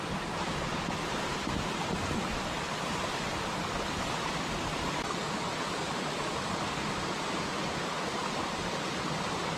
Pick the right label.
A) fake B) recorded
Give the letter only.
B